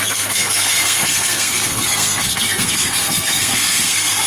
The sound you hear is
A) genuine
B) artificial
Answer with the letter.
B